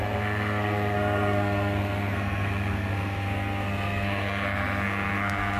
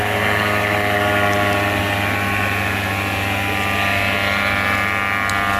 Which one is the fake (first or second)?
first